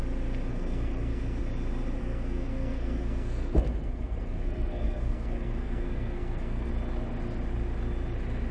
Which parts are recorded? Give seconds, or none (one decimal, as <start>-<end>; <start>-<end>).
0.0-0.5; 1.4-2.0; 6.7-8.5